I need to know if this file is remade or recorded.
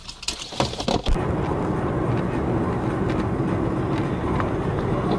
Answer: recorded